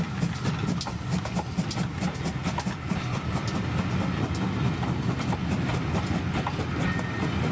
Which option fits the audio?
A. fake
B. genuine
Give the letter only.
B